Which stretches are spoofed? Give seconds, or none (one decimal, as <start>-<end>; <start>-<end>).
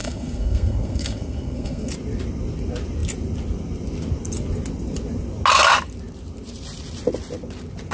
0.0-1.9